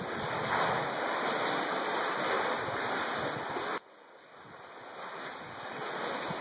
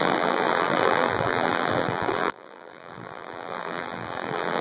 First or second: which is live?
first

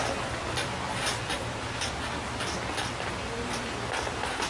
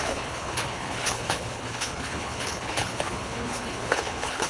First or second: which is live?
first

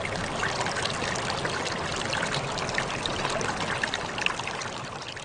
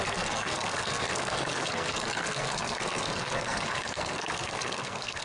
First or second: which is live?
first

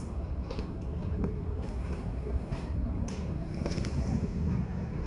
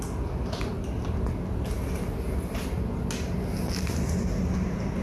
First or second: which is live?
second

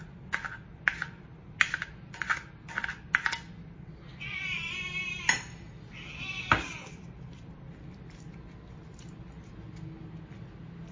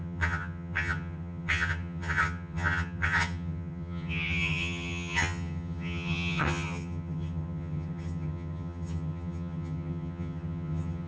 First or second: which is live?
first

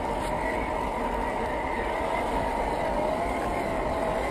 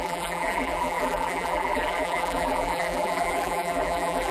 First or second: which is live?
first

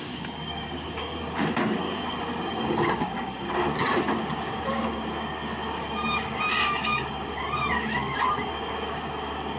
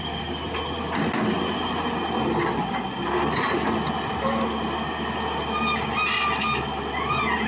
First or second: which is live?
second